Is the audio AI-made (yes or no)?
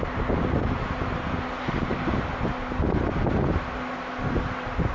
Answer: no